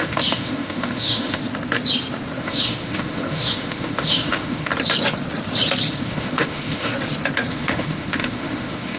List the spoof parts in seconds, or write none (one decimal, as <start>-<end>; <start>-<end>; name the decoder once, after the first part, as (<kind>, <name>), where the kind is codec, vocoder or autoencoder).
0.0-1.4 (autoencoder, DAC-VAE); 2.4-4.7; 5.9-6.9; 7.5-9.0